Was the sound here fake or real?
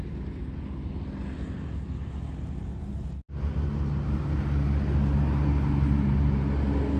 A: real